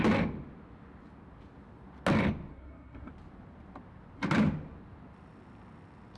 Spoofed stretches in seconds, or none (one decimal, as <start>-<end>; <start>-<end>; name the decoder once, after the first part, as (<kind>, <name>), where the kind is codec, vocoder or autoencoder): 2.5-3.1 (codec, SNAC)